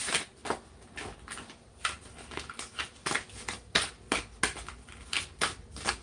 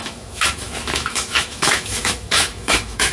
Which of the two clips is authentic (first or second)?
first